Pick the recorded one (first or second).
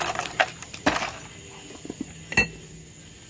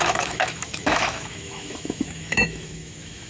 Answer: first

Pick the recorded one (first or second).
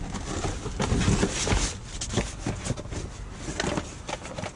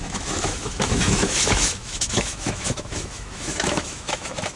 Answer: first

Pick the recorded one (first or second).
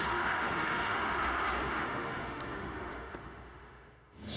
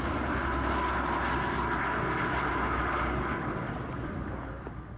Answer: second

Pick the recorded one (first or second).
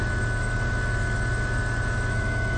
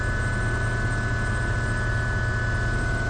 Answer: second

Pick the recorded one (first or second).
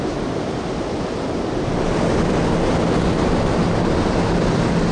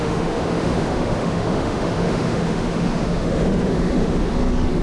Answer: first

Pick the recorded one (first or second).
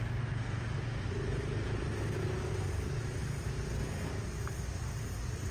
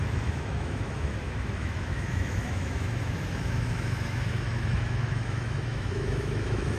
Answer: first